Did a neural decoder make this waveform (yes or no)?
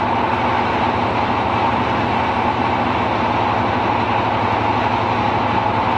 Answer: no